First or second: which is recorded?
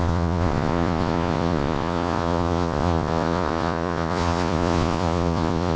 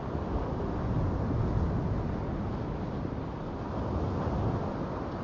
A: second